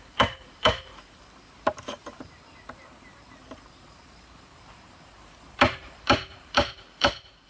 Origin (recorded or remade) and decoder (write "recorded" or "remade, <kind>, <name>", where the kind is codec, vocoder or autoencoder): remade, vocoder, BigVGAN v2